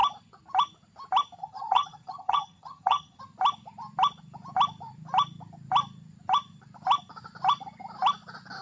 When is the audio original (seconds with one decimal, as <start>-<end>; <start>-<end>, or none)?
0.0-1.4; 3.2-8.6